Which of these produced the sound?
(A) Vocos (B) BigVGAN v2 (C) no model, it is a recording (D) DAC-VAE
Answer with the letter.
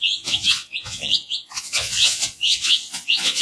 A